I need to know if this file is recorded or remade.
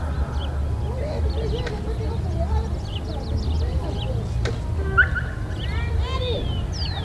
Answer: recorded